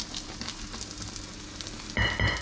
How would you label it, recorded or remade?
recorded